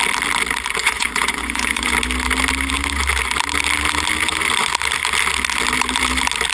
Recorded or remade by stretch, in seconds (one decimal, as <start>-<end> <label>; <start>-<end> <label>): 0.0-0.8 recorded; 0.8-1.9 remade; 1.9-6.5 recorded